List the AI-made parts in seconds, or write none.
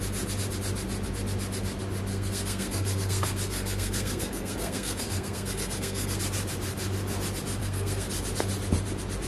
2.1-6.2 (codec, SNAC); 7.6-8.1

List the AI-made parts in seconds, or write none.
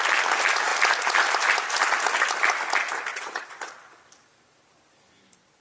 3.1-3.7 (vocoder, WaveNeXt)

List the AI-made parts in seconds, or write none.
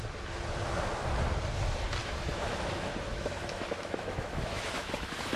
2.0-5.4 (autoencoder, DAC-VAE)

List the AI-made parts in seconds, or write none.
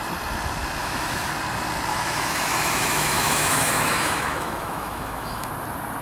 0.8-1.3 (autoencoder, DAC-VAE); 1.9-5.5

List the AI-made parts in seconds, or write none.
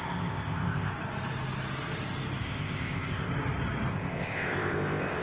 0.0-0.9 (codec, ZipCodec); 2.4-3.3; 3.9-5.2